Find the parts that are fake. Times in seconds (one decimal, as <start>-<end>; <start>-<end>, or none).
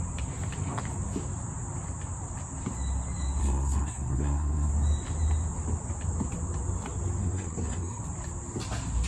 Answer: 3.4-4.7; 7.2-8.0